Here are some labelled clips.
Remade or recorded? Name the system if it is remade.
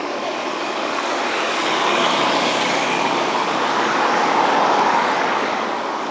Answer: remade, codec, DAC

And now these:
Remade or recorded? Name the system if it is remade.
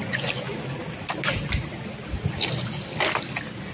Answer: recorded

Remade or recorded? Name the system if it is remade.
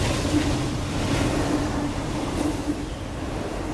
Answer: recorded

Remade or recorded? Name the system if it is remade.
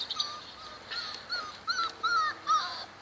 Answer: recorded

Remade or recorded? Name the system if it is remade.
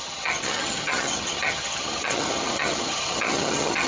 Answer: remade, vocoder, HiFi-GAN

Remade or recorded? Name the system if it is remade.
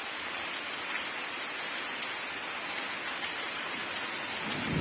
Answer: recorded